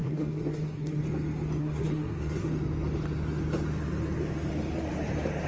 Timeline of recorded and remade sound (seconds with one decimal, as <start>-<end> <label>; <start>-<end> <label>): 0.0-1.0 remade; 1.0-1.6 recorded; 1.6-2.5 remade; 2.5-5.5 recorded